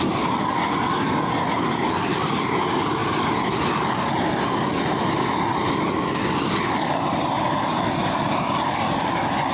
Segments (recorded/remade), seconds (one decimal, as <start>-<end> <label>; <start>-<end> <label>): 0.0-9.5 recorded